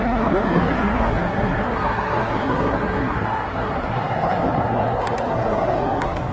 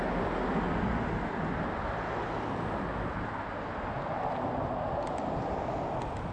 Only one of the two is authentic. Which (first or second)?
second